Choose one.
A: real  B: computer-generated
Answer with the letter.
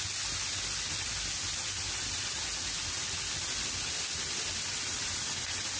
A